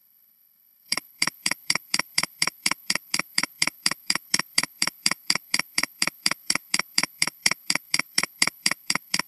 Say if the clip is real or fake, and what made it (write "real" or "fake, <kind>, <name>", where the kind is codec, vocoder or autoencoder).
fake, codec, HILCodec